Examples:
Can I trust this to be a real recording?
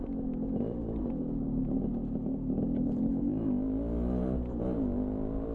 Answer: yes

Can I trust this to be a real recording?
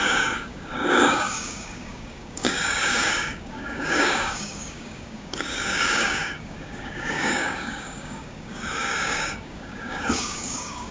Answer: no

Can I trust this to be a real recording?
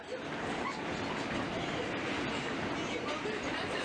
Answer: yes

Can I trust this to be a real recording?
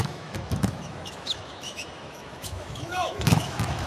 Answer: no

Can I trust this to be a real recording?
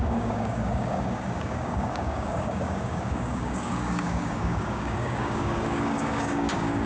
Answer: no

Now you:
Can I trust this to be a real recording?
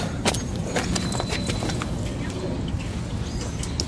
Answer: yes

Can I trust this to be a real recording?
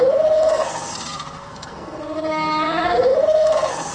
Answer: no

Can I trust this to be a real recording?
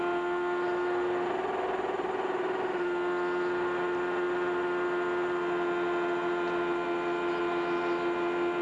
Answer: yes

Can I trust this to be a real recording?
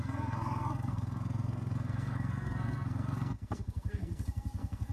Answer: no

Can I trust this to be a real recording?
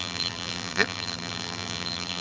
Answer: no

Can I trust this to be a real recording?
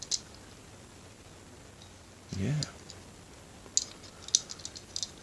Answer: yes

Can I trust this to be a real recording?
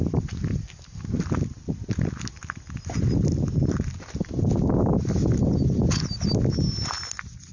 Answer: yes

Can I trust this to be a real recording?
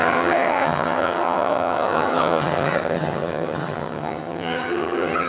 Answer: no